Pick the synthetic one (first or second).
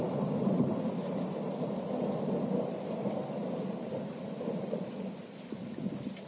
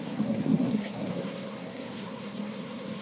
second